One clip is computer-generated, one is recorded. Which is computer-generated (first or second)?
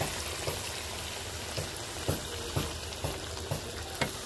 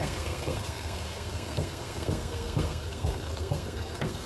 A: second